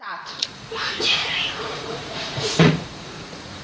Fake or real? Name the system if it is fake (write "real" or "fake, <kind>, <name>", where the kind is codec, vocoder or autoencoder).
fake, vocoder, Vocos